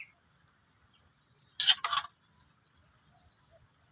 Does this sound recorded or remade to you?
recorded